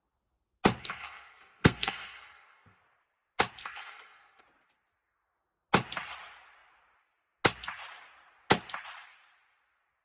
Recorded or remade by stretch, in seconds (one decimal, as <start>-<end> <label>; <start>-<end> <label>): 0.0-0.8 recorded; 0.8-2.8 remade; 2.8-3.6 recorded; 3.6-4.4 remade; 4.4-10.0 recorded